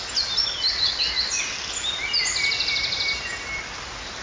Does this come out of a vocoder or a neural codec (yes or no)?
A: no